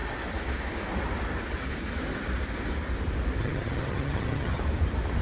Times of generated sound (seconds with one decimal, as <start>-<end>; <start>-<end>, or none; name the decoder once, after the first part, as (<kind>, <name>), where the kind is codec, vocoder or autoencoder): 3.4-4.6 (vocoder, HiFi-GAN)

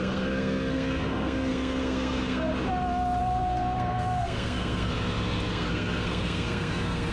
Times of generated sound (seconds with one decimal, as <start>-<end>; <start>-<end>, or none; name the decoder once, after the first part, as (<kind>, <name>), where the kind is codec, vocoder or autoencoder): 0.0-2.5 (codec, SNAC); 3.2-4.9; 5.5-7.1

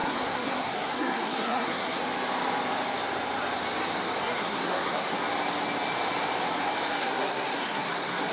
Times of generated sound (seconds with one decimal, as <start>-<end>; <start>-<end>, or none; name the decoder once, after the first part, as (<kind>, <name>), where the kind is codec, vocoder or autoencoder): 0.0-2.0 (codec, SNAC); 4.2-5.1; 7.0-8.3

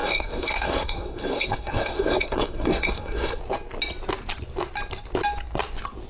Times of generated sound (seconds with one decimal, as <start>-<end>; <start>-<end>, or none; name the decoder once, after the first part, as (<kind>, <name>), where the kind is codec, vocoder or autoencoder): 0.0-3.4 (codec, SNAC)

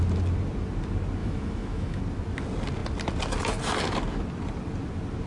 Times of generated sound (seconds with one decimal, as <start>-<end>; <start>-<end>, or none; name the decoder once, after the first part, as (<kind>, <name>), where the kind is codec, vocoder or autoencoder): 1.2-2.0 (autoencoder, DAC-VAE)